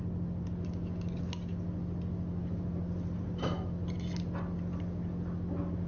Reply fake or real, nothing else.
real